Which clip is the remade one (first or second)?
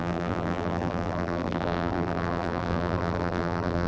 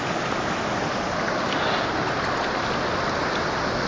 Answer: first